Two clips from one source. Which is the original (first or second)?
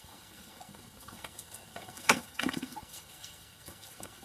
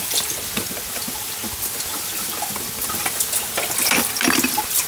second